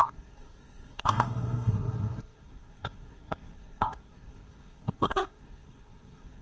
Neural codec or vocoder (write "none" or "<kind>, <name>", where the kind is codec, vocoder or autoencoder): codec, SNAC